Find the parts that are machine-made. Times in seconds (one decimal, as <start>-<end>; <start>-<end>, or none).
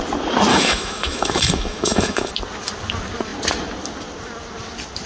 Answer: 0.5-2.3